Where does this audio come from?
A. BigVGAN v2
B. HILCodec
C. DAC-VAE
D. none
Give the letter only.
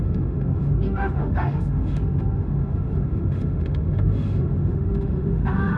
C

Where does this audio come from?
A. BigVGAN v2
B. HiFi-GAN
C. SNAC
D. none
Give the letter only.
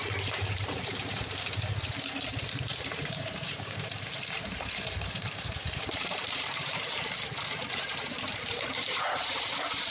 A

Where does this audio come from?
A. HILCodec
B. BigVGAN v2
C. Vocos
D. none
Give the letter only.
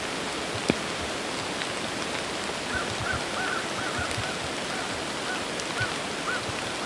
D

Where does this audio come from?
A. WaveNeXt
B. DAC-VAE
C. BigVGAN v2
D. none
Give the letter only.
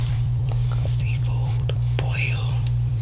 C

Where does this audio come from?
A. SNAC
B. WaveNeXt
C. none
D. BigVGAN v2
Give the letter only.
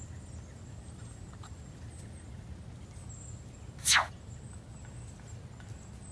C